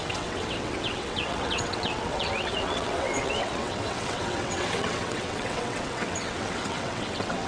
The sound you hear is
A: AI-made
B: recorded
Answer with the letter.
A